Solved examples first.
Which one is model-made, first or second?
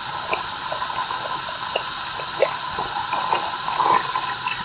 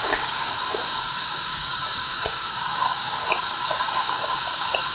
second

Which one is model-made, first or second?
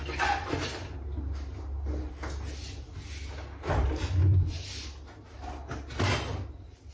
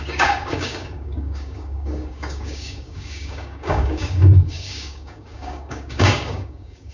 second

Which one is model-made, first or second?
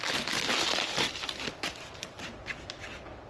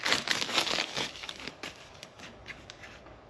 second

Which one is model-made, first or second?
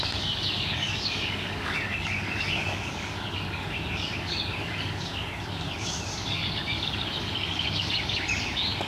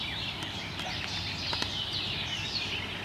first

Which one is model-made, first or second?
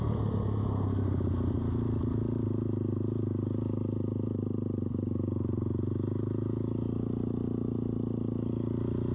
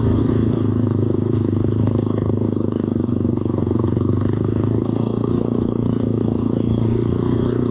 second